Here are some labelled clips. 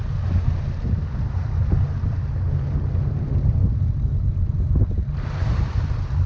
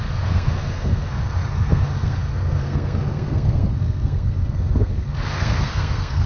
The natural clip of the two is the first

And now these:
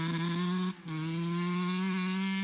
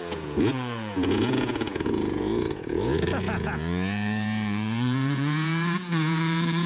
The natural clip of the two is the first